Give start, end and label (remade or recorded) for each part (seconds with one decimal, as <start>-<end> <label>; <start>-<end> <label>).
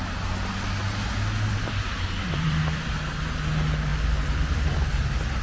0.0-5.4 recorded